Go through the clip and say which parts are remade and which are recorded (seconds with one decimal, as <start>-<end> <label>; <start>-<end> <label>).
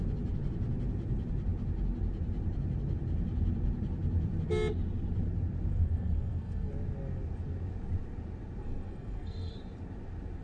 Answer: 0.0-5.7 recorded; 5.7-6.7 remade; 6.7-8.6 recorded; 8.6-9.5 remade; 9.5-10.4 recorded